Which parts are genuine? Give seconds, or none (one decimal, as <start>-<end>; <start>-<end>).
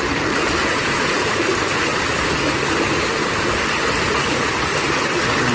0.0-0.6; 1.4-5.5